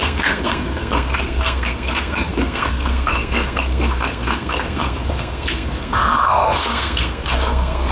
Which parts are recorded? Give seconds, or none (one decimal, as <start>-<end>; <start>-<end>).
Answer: none